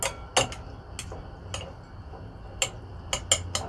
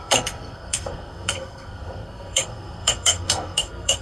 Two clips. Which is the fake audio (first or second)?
second